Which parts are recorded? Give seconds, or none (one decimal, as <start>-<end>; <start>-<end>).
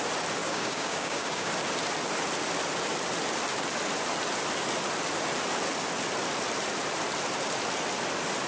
0.0-0.4; 1.5-8.5